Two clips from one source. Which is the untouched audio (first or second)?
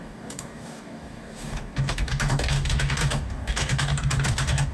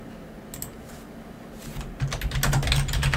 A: second